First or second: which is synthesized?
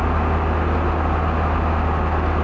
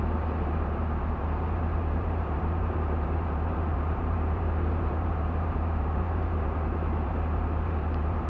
second